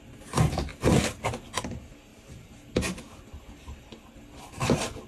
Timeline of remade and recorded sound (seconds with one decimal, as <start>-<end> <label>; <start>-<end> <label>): 0.0-0.7 recorded; 0.7-1.6 remade; 1.6-2.1 recorded; 2.1-3.4 remade; 3.4-5.1 recorded